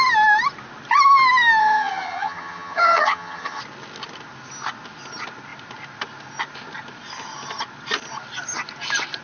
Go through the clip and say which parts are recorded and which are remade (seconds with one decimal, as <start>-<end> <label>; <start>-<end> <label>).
0.0-1.6 recorded; 1.6-3.6 remade; 3.6-9.2 recorded